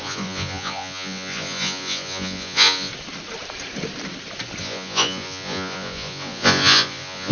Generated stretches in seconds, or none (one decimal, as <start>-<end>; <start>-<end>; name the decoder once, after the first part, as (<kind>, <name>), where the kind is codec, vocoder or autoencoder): 0.0-2.9 (vocoder, Vocos); 4.6-7.3